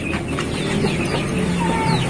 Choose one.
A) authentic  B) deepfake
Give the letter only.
A